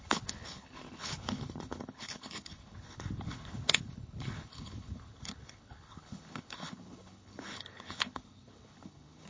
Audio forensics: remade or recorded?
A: remade